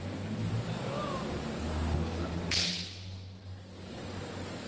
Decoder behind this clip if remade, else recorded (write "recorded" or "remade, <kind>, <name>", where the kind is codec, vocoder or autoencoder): recorded